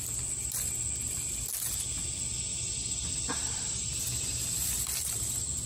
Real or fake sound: real